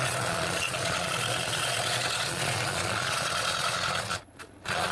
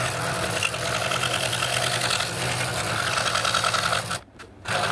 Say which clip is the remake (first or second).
first